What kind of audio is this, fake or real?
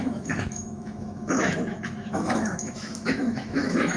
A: fake